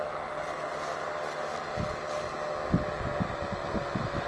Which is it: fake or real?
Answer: real